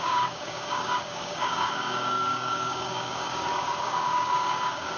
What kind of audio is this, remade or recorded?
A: remade